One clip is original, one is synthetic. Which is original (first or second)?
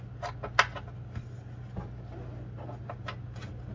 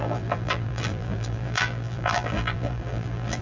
first